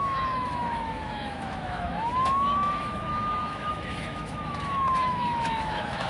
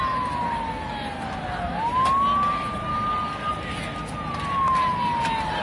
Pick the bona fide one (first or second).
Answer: second